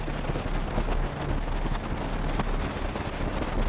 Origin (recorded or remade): recorded